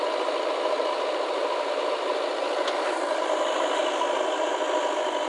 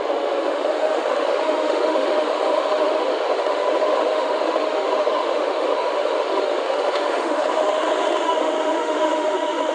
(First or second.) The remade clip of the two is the second